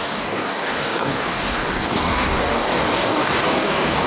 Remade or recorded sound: remade